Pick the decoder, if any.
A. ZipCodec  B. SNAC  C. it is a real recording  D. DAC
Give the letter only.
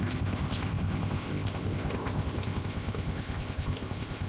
A